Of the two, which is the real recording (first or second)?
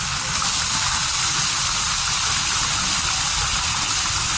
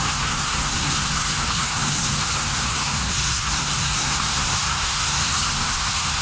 first